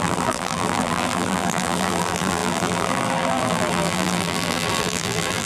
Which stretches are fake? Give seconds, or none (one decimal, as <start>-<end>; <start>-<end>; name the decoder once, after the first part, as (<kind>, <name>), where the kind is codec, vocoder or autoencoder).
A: 0.0-5.5 (vocoder, BigVGAN v2)